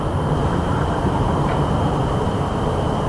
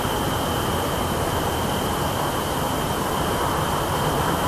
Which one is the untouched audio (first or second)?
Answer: second